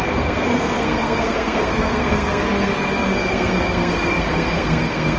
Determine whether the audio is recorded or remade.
remade